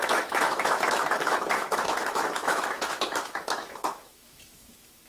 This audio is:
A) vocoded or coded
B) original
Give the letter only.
A